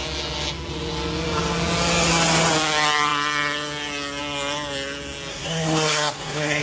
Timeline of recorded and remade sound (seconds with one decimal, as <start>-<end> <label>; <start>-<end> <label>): 0.0-5.3 recorded; 5.3-6.6 remade